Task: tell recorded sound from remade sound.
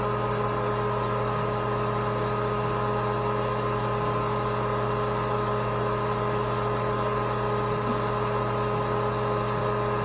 recorded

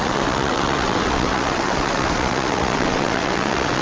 remade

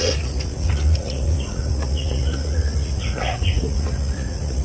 remade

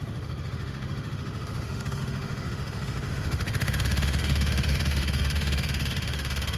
remade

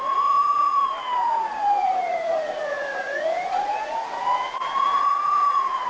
remade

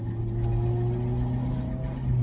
recorded